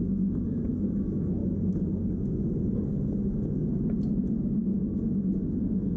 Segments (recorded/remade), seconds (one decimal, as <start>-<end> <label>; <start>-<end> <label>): 0.0-1.4 remade; 1.4-4.2 recorded; 4.2-4.7 remade; 4.7-5.6 recorded; 5.6-6.0 remade